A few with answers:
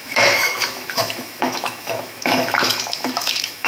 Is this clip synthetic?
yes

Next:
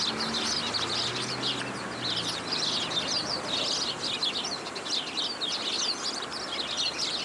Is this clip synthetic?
no